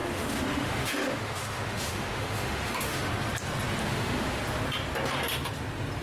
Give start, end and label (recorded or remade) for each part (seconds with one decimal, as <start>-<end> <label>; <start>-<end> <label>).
0.0-3.1 remade; 3.1-3.8 recorded; 3.8-4.4 remade; 4.4-6.0 recorded